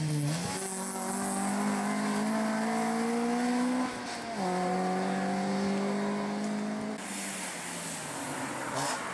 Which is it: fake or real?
real